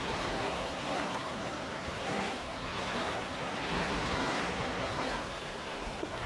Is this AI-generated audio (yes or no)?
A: yes